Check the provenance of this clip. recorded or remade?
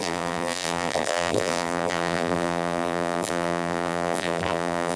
remade